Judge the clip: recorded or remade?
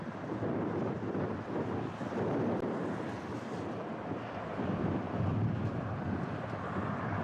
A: recorded